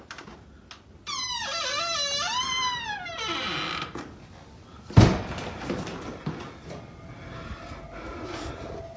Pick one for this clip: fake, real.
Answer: real